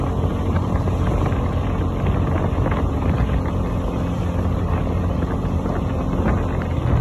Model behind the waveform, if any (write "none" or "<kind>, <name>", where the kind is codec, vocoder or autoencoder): none